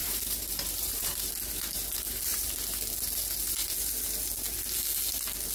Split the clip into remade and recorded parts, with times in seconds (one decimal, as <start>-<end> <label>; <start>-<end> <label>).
0.0-1.3 remade; 1.3-5.5 recorded